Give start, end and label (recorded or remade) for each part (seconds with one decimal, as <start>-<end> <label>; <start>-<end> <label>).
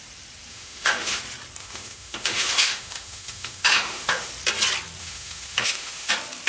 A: 0.0-0.5 recorded; 0.5-1.2 remade; 1.2-1.6 recorded; 1.6-4.3 remade; 4.3-5.0 recorded; 5.0-6.1 remade; 6.1-6.5 recorded